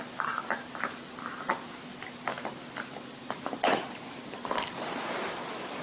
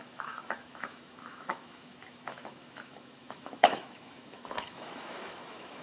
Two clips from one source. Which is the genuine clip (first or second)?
first